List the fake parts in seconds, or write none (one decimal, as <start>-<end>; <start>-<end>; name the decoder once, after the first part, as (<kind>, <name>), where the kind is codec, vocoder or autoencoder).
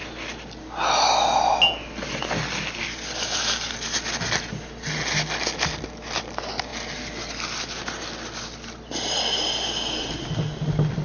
none